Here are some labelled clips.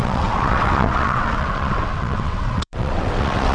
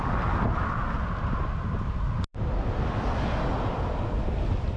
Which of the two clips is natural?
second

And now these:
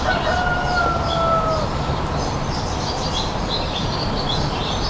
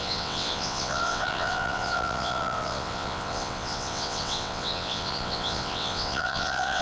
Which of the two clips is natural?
first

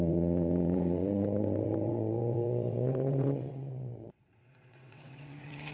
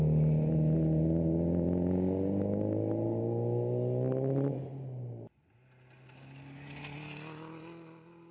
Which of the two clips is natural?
second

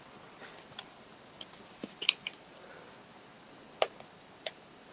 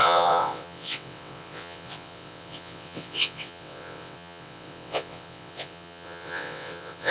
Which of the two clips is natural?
first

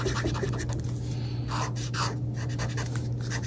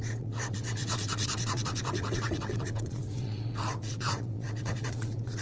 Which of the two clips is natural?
first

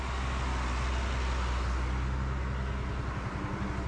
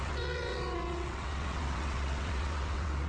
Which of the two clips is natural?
first